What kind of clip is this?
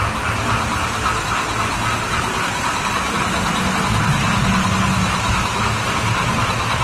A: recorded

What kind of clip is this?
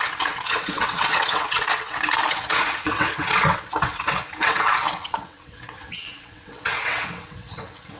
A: remade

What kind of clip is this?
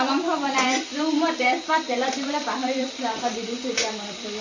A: remade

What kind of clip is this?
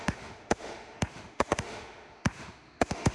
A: remade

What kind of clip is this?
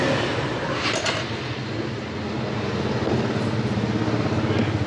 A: recorded